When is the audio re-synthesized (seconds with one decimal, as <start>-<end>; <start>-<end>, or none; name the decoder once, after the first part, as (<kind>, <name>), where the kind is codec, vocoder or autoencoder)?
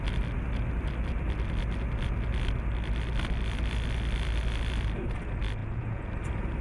5.6-6.1 (vocoder, Vocos)